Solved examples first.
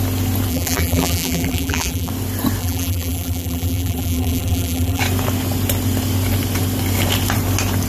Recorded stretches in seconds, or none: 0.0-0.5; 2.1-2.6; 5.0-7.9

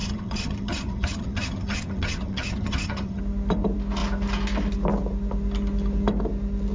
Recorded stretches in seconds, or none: 3.2-6.7

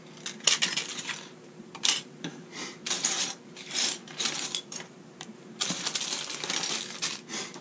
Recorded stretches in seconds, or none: 0.0-0.9; 5.5-7.6

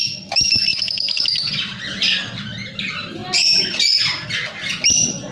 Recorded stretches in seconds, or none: 0.0-5.3

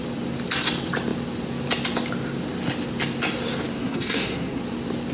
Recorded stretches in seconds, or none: 0.0-3.7; 4.6-5.1

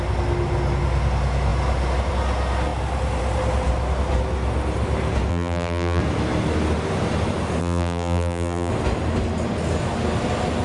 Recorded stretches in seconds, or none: 0.0-5.3; 6.0-7.6; 8.7-10.6

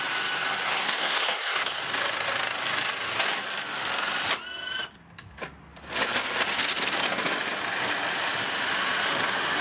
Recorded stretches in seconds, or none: 0.0-0.7; 1.8-9.6

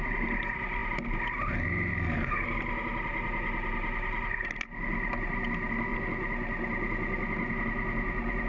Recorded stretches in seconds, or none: 0.0-8.5